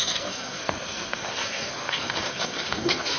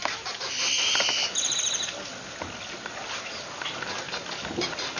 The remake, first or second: first